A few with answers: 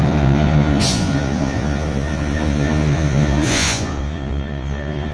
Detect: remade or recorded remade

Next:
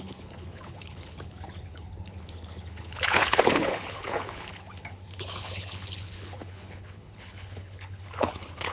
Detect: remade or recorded remade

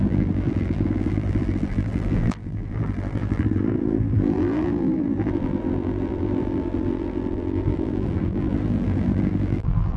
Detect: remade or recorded remade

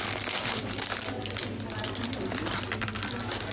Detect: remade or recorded recorded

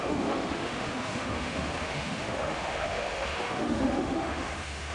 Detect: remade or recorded remade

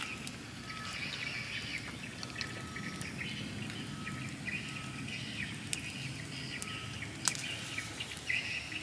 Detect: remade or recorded recorded